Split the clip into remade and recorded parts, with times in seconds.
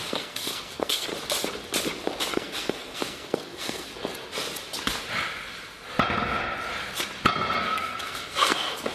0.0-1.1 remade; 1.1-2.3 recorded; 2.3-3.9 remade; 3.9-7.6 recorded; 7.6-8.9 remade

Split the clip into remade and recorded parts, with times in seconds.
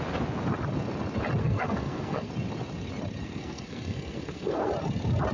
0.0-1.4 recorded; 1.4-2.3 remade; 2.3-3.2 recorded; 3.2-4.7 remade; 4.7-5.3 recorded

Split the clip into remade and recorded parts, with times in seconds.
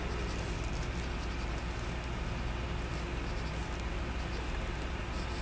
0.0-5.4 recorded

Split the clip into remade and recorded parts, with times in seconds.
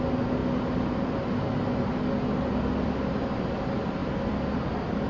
0.0-5.1 recorded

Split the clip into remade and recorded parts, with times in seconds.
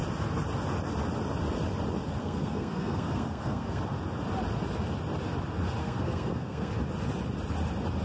0.0-2.2 recorded; 2.2-3.8 remade; 3.8-5.8 recorded; 5.8-6.7 remade; 6.7-8.0 recorded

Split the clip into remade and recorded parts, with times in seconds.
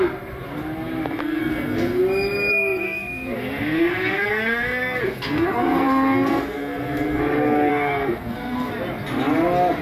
0.0-1.2 recorded; 1.2-2.0 remade; 2.0-2.5 recorded; 2.5-7.2 remade; 7.2-7.7 recorded; 7.7-8.7 remade; 8.7-9.8 recorded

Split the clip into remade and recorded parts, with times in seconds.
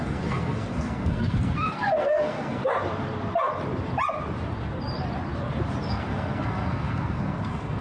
0.0-2.6 remade; 2.6-5.9 recorded; 5.9-7.8 remade